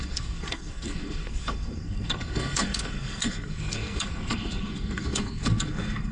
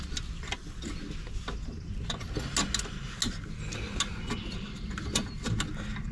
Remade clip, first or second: first